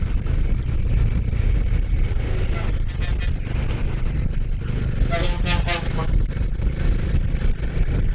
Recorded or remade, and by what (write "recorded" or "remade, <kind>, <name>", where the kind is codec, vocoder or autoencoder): recorded